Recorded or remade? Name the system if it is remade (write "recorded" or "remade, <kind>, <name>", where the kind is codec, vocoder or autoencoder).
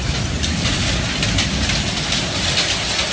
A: recorded